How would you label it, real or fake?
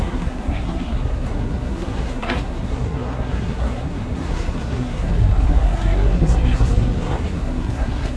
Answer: fake